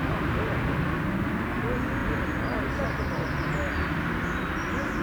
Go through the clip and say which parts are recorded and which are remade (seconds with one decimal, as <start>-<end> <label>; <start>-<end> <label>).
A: 0.0-5.0 recorded